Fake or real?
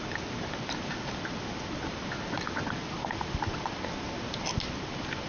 real